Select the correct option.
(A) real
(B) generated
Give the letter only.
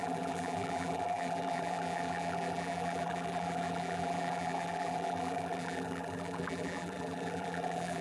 B